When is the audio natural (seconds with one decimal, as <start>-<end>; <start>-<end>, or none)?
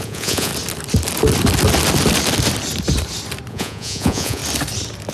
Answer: 0.5-3.5; 4.4-5.1